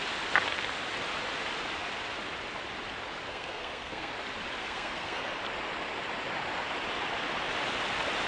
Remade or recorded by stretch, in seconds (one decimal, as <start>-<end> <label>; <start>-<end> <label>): 0.0-3.3 recorded; 3.3-4.1 remade; 4.1-4.6 recorded; 4.6-5.2 remade; 5.2-8.3 recorded